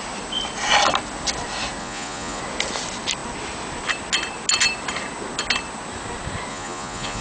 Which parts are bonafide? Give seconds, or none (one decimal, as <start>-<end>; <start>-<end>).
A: 0.0-1.8; 2.4-6.5